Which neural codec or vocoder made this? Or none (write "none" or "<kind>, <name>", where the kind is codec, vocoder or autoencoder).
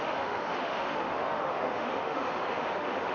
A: autoencoder, DAC-VAE